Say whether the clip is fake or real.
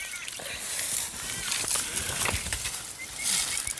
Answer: real